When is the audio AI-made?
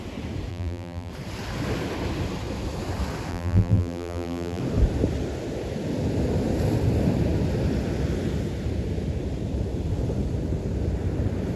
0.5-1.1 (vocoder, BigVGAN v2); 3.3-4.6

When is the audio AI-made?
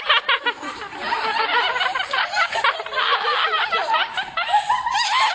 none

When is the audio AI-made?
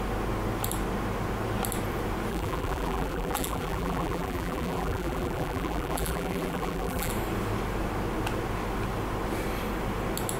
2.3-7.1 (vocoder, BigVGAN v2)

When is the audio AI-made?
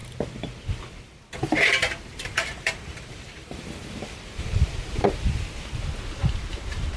2.1-4.6 (vocoder, BigVGAN v2); 6.2-7.0